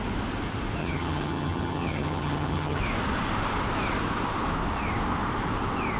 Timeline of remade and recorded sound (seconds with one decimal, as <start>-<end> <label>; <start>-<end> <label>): 0.0-0.8 recorded; 0.8-2.8 remade; 2.8-6.0 recorded